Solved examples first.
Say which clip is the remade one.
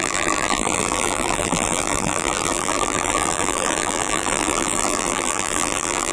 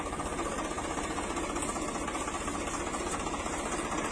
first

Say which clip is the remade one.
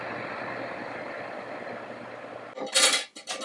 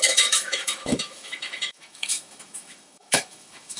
second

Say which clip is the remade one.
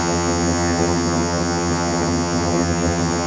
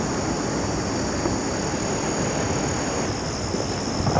first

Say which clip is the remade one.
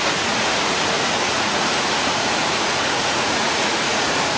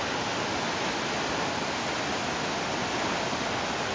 first